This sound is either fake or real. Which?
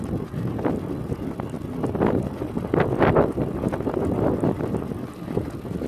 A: real